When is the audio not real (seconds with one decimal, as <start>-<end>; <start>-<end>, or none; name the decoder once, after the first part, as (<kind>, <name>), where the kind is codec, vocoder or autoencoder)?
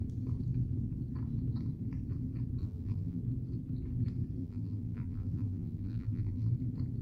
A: 2.6-3.2 (vocoder, BigVGAN v2); 4.4-6.5